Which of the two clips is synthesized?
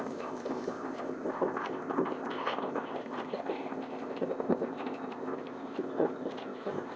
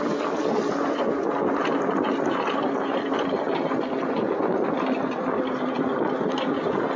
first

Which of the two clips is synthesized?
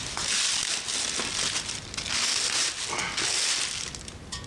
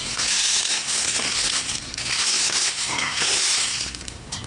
second